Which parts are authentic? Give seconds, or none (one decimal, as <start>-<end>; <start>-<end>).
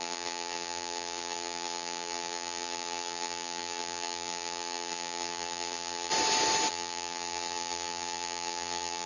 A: 6.1-6.7